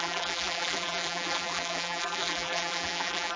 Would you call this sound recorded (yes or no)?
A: no